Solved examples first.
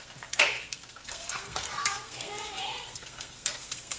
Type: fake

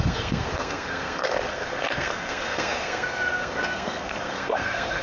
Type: fake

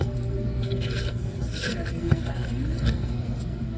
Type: fake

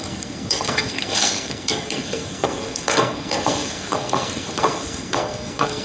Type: fake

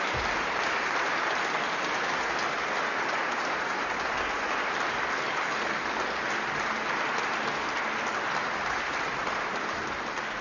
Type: real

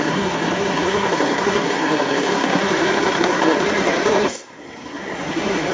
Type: fake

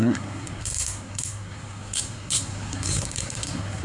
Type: fake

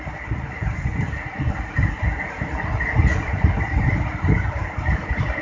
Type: real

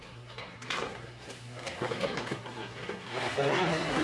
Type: fake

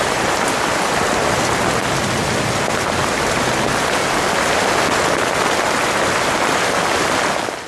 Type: real